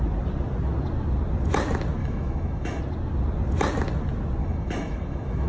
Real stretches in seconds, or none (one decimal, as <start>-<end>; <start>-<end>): 0.0-2.0; 2.8-4.4